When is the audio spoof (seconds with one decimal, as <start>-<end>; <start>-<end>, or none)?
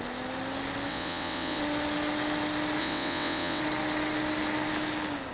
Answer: 0.9-1.6; 2.8-3.6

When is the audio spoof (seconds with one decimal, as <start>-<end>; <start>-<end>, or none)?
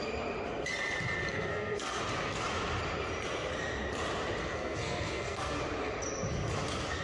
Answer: 1.3-2.0; 4.4-5.6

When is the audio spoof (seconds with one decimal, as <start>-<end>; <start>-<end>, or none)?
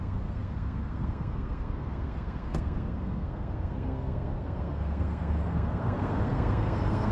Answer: 0.0-7.1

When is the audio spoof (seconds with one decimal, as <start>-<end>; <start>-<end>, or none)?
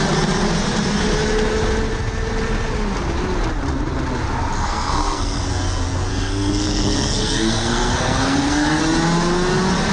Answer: 4.6-5.5; 6.1-8.8